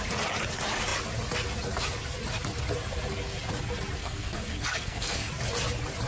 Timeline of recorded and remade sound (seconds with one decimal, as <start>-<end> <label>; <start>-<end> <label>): 0.0-4.0 recorded; 4.0-5.3 remade; 5.3-6.1 recorded